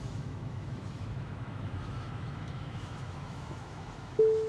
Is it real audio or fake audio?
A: fake